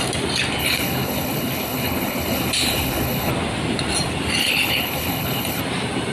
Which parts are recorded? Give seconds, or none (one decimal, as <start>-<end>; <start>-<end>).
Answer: 0.0-0.6; 3.3-4.4; 5.6-6.1